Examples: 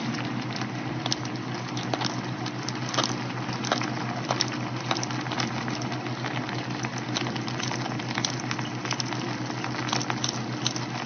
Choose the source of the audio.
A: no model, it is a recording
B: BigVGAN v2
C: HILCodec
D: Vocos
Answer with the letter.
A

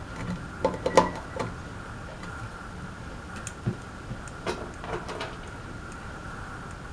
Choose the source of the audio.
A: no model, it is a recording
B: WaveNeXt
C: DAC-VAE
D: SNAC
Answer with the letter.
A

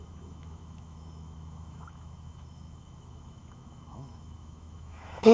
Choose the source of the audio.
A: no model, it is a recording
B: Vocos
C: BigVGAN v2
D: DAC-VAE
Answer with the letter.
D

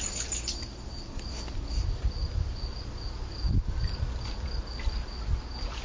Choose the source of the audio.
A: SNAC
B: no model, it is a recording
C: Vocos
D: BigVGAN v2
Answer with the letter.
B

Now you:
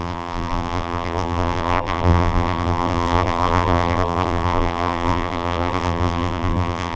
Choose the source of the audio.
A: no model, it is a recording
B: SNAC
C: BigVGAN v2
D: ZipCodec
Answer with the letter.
C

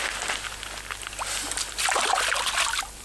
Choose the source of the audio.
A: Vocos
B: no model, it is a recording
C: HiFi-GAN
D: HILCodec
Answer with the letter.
B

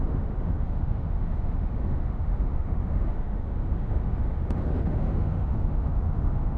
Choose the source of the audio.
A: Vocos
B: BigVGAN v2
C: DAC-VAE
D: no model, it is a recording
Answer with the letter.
C